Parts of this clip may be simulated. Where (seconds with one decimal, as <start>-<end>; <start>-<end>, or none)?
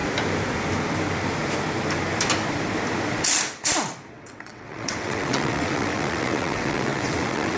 4.1-7.6